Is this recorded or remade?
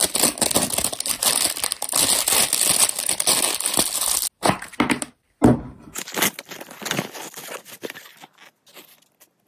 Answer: recorded